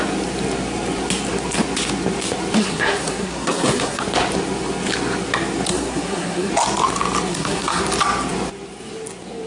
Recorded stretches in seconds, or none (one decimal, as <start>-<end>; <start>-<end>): 0.0-2.6; 4.0-5.7; 6.5-7.3; 7.8-9.5